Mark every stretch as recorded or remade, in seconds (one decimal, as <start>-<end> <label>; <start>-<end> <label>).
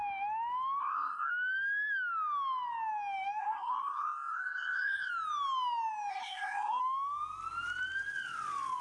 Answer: 0.0-0.8 recorded; 0.8-1.3 remade; 1.3-3.4 recorded; 3.4-5.1 remade; 5.1-6.1 recorded; 6.1-6.8 remade; 6.8-8.8 recorded